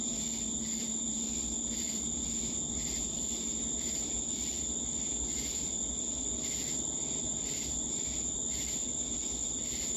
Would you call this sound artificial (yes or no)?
yes